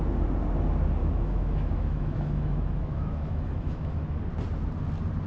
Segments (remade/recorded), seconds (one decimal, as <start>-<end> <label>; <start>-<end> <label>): 0.0-1.0 recorded; 1.0-4.2 remade; 4.2-5.3 recorded

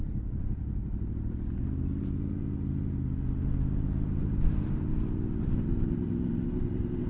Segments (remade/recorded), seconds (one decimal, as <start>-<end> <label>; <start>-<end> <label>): 0.0-0.8 remade; 0.8-4.2 recorded; 4.2-4.9 remade; 4.9-5.4 recorded; 5.4-7.1 remade

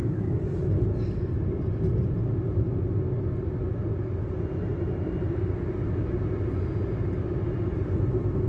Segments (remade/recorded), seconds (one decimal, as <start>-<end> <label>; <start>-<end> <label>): 0.0-4.7 recorded; 4.7-5.9 remade; 5.9-8.5 recorded

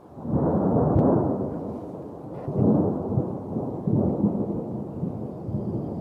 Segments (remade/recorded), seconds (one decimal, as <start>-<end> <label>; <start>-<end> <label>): 0.0-0.5 recorded; 0.5-4.1 remade; 4.1-6.0 recorded